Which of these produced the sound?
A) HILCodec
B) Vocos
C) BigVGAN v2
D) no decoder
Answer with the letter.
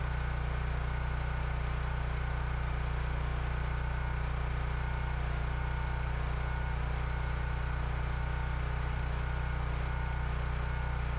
D